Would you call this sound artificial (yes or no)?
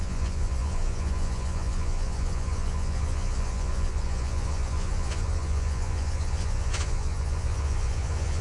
yes